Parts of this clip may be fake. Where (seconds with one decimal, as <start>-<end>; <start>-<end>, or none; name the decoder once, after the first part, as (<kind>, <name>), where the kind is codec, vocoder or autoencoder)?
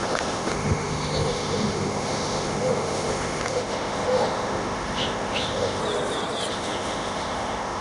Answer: 0.0-5.8 (autoencoder, DAC-VAE); 6.5-7.8